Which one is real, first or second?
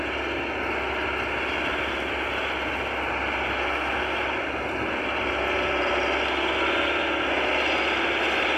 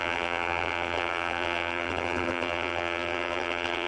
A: first